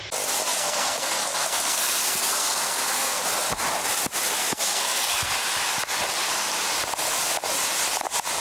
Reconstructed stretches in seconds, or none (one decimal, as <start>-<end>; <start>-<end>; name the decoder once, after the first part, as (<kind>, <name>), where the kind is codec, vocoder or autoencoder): 0.5-3.2 (codec, SNAC); 4.4-5.3